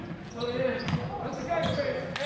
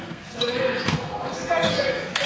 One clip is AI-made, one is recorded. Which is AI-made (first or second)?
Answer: second